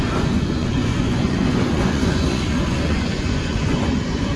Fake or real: fake